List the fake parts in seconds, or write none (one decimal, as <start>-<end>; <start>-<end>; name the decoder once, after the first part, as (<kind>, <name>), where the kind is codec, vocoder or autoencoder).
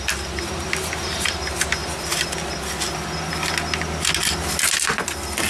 none